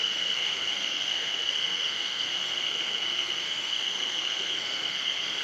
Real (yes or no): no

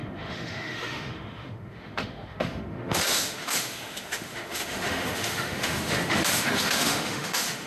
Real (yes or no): no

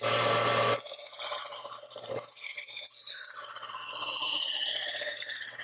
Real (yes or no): no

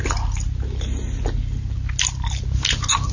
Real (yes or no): yes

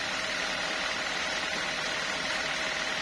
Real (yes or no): yes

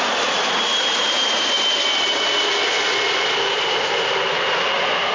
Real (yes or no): yes